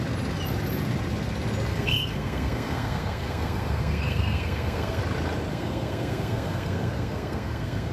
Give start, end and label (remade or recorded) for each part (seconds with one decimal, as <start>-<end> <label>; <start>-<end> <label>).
0.0-1.7 recorded; 1.7-5.0 remade; 5.0-5.5 recorded; 5.5-7.9 remade